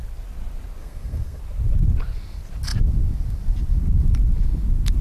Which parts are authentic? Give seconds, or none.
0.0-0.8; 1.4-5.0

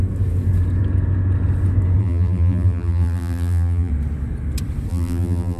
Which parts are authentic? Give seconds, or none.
0.0-2.0; 3.9-4.9

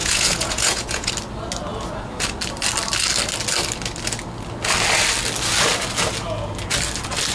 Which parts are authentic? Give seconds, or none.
1.1-7.3

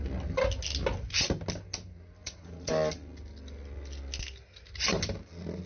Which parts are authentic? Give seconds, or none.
0.0-2.2; 2.7-5.7

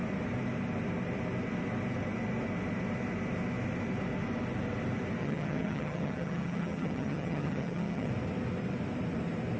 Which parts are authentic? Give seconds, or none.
0.0-5.2; 8.1-9.6

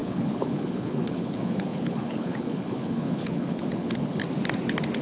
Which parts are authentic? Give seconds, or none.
4.2-5.0

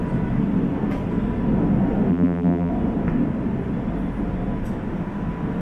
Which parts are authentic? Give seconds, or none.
0.0-2.1; 2.7-5.6